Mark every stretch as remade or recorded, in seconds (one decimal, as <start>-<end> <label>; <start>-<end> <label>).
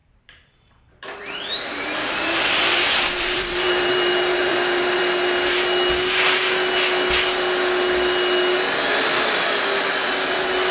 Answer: 0.0-5.0 remade; 5.0-10.7 recorded